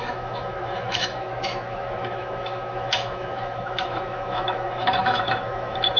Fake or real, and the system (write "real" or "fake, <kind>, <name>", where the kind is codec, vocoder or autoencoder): fake, autoencoder, DAC-VAE